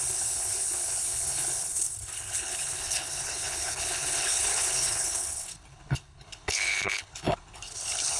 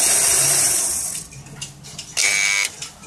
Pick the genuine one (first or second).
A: second